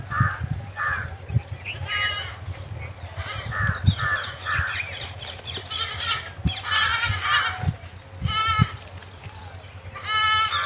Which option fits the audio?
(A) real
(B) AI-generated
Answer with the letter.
A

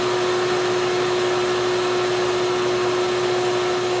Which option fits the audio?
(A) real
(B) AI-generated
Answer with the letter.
A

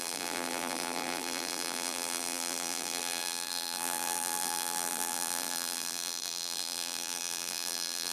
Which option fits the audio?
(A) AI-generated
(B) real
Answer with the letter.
A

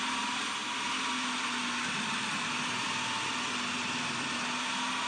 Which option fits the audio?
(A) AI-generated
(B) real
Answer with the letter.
B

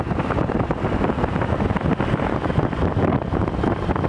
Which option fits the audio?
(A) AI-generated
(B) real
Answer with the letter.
A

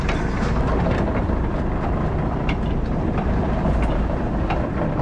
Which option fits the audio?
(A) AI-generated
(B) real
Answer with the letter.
A